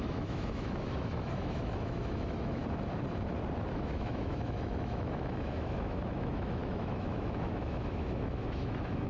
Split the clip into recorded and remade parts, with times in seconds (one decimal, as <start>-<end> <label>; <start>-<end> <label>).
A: 0.0-2.6 remade; 2.6-3.7 recorded; 3.7-9.1 remade